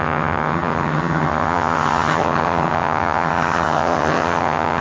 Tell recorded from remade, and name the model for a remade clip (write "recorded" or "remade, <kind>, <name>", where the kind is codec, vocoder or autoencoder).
remade, vocoder, HiFi-GAN